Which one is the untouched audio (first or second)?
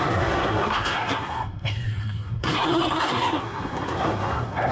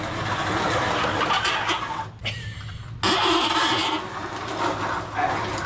second